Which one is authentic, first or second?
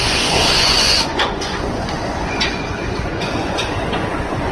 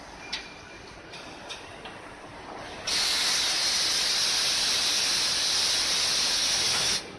second